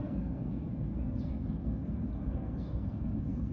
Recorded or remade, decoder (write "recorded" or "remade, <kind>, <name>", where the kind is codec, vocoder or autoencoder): remade, codec, SNAC